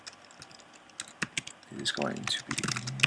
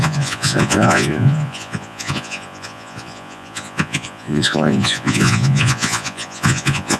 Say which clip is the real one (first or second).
first